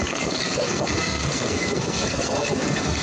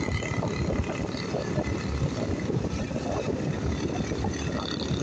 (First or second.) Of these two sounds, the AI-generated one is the first